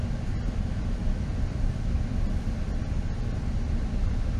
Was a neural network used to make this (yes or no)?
yes